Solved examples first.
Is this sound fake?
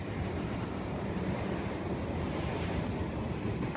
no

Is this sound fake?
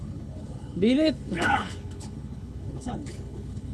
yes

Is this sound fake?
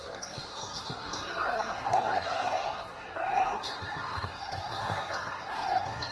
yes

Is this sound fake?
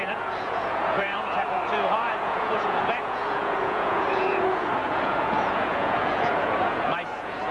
yes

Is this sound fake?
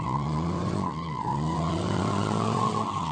yes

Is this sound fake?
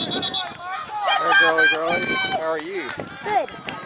no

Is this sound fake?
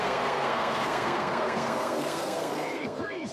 yes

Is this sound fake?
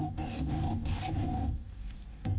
yes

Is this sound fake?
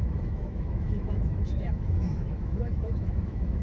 yes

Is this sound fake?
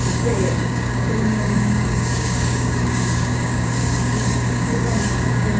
yes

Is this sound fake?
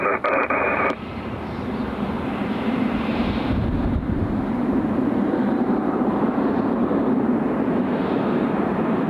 yes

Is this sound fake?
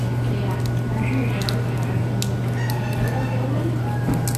no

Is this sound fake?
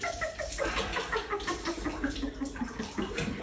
no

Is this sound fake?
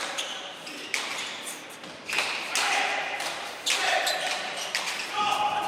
no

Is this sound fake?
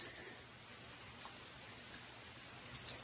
no